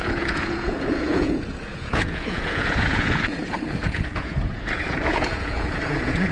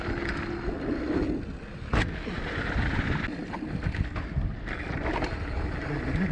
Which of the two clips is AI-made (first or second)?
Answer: first